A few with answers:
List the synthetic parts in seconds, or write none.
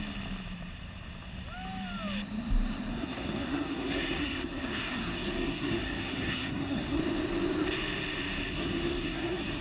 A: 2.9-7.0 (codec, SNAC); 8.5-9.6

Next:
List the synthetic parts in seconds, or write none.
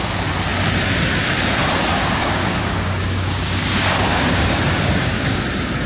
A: 1.9-5.4 (codec, DAC)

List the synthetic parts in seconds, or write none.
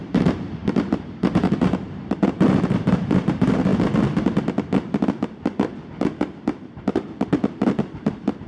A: 0.0-3.7 (vocoder, BigVGAN v2); 6.7-8.5